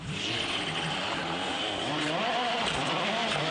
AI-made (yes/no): yes